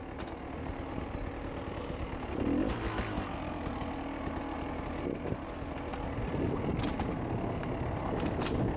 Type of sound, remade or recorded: recorded